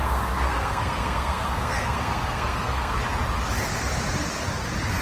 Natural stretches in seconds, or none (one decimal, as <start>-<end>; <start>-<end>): 3.0-5.0